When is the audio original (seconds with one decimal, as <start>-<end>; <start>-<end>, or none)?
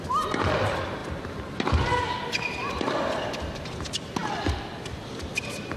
0.0-5.8